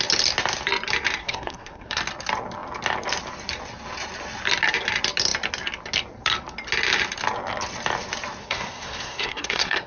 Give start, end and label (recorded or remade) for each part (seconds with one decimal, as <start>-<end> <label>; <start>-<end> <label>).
0.0-1.2 recorded; 1.2-2.0 remade; 2.0-8.4 recorded; 8.4-9.9 remade